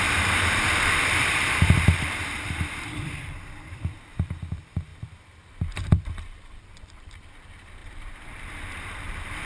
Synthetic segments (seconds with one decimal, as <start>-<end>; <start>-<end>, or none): 0.0-9.4